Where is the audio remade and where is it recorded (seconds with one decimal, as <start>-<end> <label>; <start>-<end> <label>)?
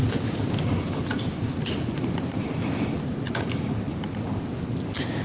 0.0-5.2 recorded